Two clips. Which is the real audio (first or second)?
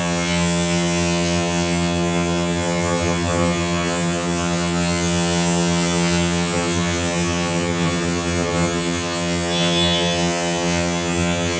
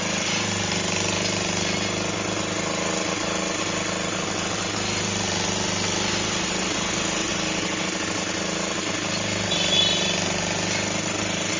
second